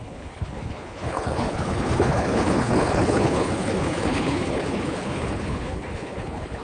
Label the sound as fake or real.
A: fake